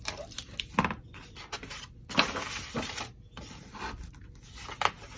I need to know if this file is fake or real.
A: real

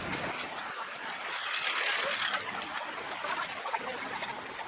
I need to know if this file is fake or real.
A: real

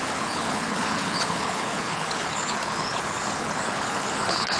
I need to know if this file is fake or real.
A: fake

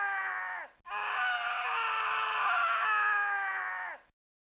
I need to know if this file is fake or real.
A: real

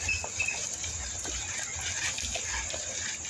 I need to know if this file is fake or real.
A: real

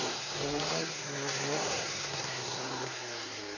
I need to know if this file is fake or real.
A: fake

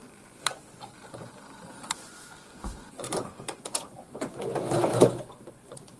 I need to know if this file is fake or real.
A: fake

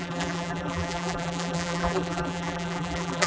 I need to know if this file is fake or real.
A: fake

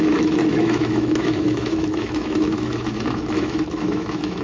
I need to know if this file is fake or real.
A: fake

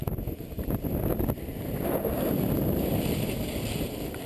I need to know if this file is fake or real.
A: real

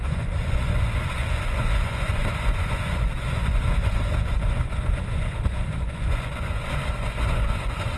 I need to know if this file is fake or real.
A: fake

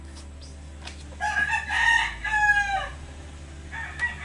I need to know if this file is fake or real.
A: real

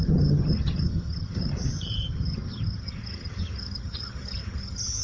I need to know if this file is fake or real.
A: fake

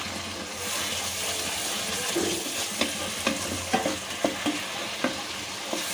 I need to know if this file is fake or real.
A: real